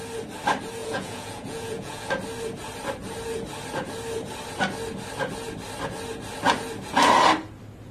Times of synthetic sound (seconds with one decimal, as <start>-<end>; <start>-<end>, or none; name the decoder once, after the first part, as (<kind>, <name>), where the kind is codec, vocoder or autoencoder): 0.8-2.1 (vocoder, Vocos)